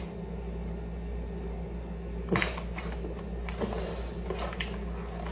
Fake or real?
real